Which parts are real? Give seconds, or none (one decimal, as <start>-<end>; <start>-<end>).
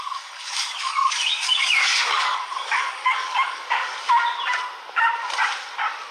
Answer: 3.9-6.1